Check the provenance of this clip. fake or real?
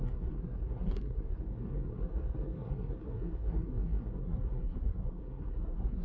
fake